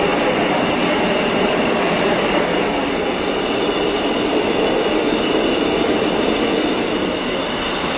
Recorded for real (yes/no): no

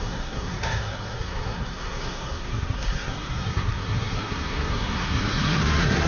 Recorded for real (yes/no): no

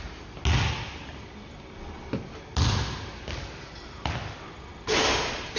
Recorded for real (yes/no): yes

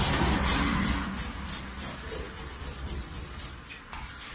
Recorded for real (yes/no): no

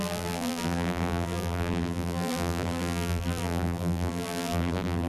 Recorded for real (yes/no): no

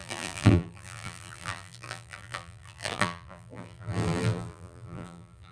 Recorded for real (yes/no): no